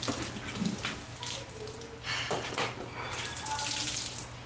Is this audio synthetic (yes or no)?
no